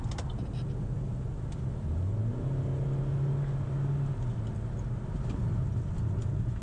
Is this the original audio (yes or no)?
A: yes